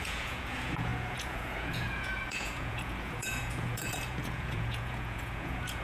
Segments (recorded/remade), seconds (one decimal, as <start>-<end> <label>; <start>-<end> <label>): 0.0-5.8 remade